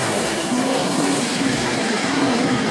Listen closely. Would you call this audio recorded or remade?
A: remade